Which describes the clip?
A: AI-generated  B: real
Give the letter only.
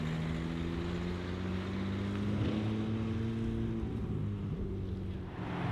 B